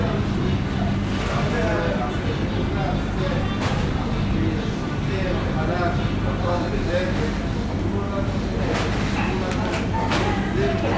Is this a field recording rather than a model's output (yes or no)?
yes